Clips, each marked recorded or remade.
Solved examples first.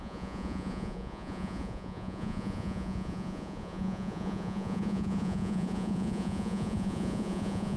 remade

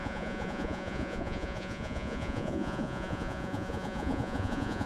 remade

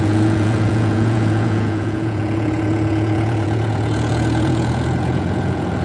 remade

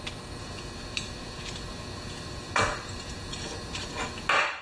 recorded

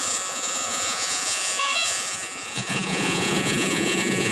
remade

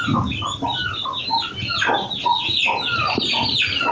recorded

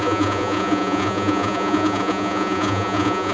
remade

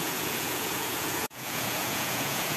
remade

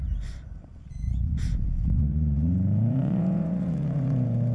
remade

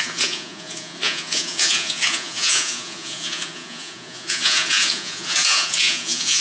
remade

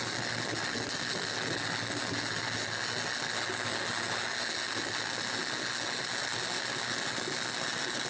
recorded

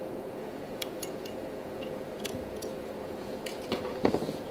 remade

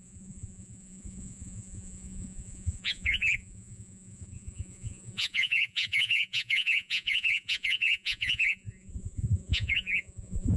remade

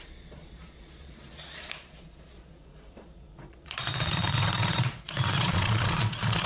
remade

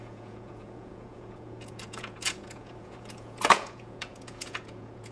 remade